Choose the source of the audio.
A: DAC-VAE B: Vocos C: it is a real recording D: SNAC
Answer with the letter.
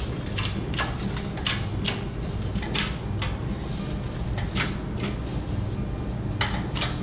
C